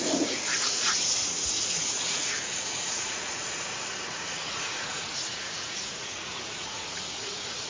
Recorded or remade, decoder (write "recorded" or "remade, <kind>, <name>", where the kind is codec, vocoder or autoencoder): remade, vocoder, Vocos